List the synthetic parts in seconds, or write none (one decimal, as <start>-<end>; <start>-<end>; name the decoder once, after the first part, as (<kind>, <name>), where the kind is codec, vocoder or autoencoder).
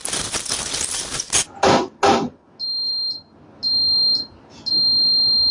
none